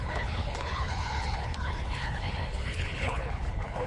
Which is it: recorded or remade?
remade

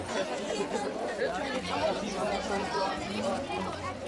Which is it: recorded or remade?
remade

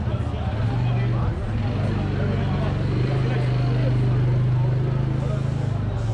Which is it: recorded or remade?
recorded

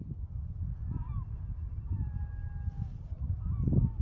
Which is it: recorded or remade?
recorded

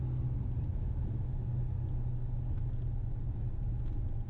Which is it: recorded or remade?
recorded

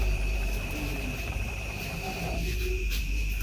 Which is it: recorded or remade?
remade